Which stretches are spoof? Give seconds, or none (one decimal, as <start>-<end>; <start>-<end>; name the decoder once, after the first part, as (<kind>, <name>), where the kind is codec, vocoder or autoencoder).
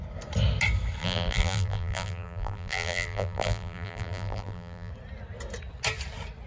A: 1.0-4.9 (vocoder, BigVGAN v2)